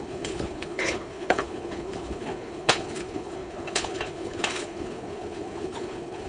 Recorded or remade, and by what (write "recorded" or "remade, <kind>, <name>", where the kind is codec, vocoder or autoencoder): remade, codec, HILCodec